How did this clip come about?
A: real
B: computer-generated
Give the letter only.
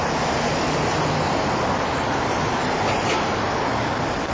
A